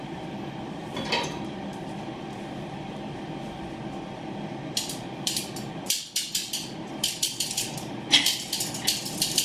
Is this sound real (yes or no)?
no